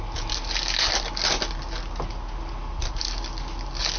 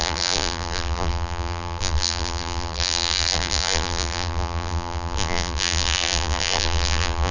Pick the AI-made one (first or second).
second